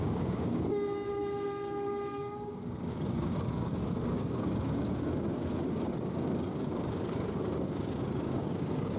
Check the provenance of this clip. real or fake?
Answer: fake